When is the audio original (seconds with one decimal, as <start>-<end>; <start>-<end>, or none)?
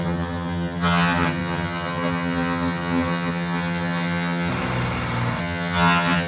4.5-5.4